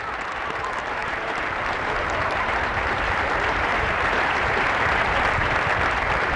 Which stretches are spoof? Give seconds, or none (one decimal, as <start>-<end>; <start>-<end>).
1.0-4.8